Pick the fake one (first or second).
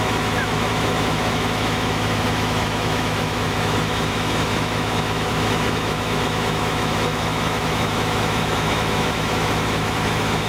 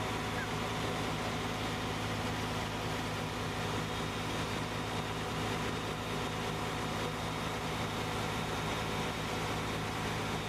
first